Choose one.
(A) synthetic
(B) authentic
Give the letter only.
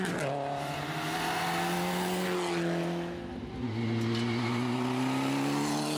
B